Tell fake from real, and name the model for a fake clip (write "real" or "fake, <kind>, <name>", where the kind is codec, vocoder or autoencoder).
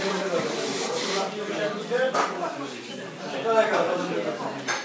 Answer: fake, vocoder, BigVGAN v2